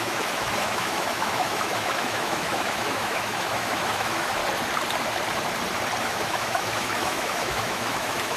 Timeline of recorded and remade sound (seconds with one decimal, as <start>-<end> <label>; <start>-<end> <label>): 0.0-4.4 remade; 4.4-6.0 recorded; 6.0-8.4 remade